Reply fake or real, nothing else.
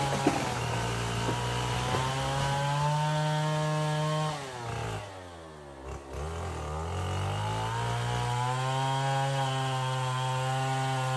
real